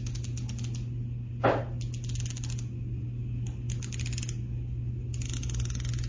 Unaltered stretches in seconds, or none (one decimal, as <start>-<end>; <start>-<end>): 0.0-6.1